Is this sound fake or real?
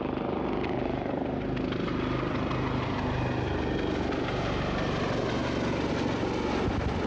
real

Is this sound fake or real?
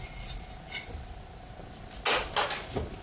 real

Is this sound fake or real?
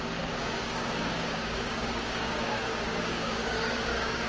fake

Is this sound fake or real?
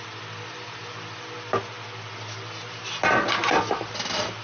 real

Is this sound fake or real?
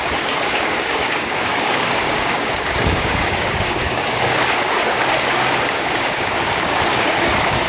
fake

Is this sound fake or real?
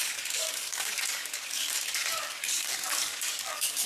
fake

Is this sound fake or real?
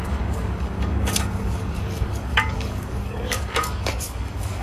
fake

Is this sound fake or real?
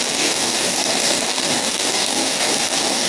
fake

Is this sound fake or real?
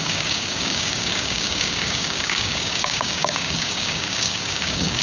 fake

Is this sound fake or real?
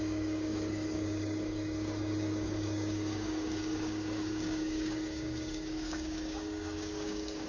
fake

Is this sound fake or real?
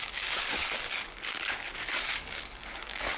fake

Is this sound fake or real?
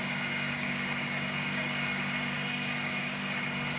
fake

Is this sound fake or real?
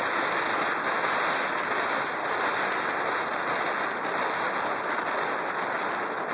real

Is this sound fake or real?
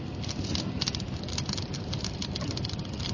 real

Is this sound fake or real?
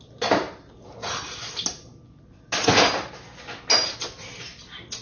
real